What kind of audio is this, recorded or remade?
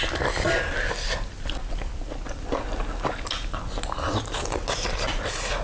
recorded